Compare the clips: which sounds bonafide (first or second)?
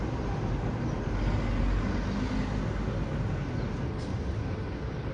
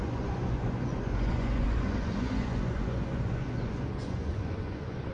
first